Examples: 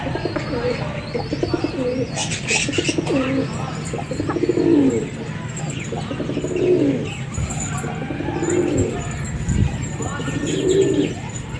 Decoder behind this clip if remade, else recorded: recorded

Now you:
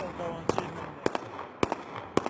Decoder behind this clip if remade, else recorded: recorded